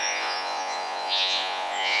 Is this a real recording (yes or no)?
no